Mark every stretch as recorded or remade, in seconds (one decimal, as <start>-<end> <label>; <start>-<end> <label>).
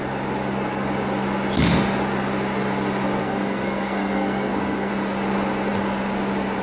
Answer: 0.0-3.2 recorded; 3.2-4.9 remade; 4.9-6.6 recorded